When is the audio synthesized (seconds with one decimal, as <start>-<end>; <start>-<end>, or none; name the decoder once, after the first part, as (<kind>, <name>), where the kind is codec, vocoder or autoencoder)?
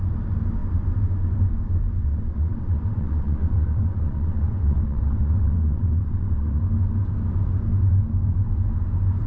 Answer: 2.0-6.6 (vocoder, WaveNeXt)